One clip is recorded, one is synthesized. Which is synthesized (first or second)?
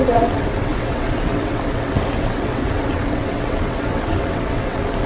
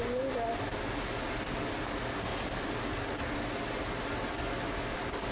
first